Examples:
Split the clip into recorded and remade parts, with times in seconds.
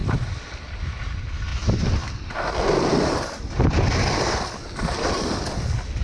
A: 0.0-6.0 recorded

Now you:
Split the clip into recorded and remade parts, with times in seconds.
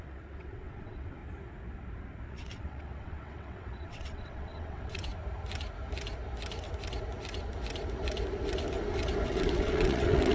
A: 0.0-1.2 remade; 1.2-2.3 recorded; 2.3-5.1 remade; 5.1-9.3 recorded; 9.3-10.3 remade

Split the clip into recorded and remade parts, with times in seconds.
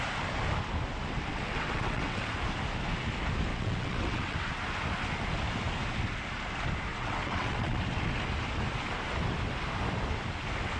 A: 0.0-1.3 recorded; 1.3-2.2 remade; 2.2-3.5 recorded; 3.5-4.5 remade; 4.5-6.9 recorded; 6.9-7.8 remade; 7.8-10.8 recorded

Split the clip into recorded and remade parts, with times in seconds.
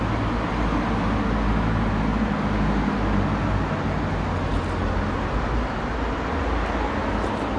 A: 0.0-7.6 recorded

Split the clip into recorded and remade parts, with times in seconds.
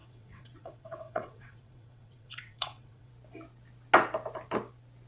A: 0.0-3.1 remade; 3.1-5.1 recorded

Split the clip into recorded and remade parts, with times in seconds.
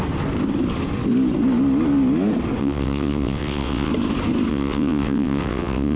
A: 0.0-2.6 recorded; 2.6-3.9 remade; 3.9-4.5 recorded; 4.5-6.0 remade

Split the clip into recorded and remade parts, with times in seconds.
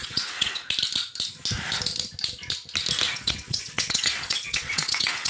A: 0.0-0.7 remade; 0.7-3.1 recorded; 3.1-5.3 remade